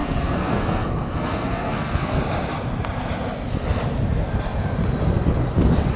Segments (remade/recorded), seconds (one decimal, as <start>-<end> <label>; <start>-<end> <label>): 0.0-2.2 remade; 2.2-6.0 recorded